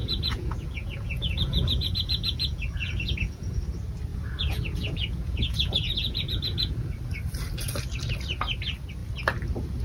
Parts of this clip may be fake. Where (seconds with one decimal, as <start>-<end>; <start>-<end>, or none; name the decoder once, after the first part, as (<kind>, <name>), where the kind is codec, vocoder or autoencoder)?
0.0-3.6 (vocoder, Vocos); 4.1-6.9